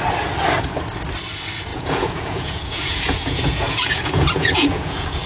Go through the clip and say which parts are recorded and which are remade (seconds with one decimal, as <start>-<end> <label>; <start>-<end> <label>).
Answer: 0.0-1.7 recorded; 1.7-5.3 remade